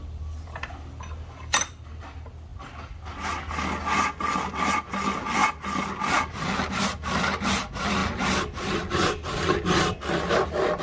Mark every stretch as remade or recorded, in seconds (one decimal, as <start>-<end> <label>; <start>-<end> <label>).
0.0-10.8 recorded